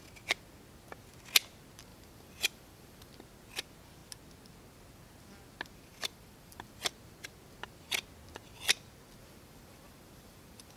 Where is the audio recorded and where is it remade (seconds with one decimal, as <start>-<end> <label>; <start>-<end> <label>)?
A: 0.0-1.9 recorded; 1.9-3.1 remade; 3.1-5.9 recorded; 5.9-6.9 remade; 6.9-9.2 recorded; 9.2-10.8 remade